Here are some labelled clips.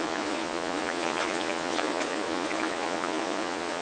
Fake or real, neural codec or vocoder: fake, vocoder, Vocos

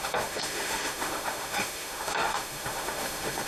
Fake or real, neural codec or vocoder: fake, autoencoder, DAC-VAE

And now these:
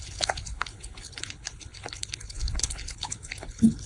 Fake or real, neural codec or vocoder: fake, codec, HILCodec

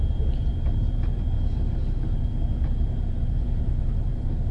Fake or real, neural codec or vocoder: fake, vocoder, BigVGAN v2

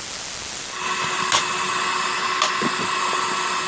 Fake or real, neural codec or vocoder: real